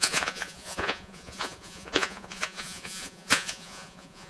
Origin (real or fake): fake